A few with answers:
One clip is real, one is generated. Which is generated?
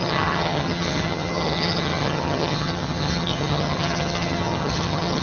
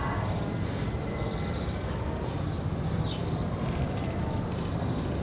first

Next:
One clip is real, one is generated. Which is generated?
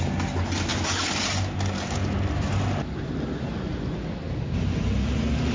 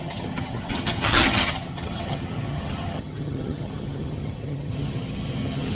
second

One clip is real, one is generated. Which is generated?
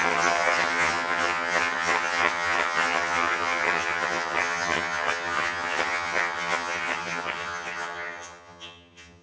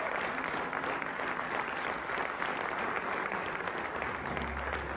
first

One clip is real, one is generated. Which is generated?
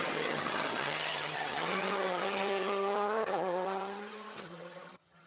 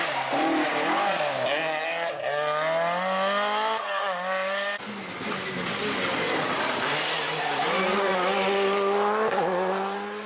first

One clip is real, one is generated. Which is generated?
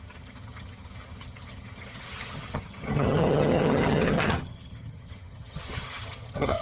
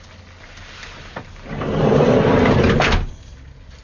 first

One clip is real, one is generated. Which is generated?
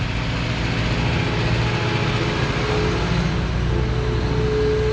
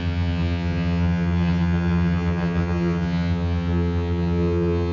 second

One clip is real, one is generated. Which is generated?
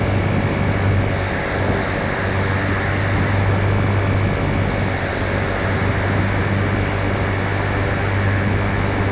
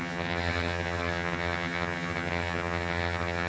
second